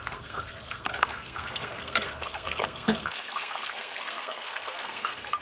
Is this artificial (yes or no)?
yes